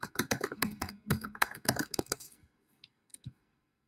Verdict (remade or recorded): remade